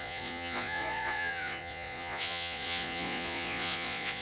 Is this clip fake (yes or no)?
yes